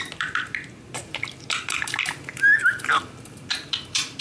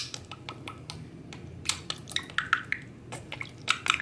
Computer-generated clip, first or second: first